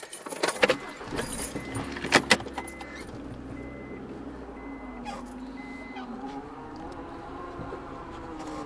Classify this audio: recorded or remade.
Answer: recorded